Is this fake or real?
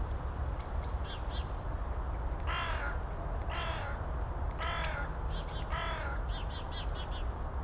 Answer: real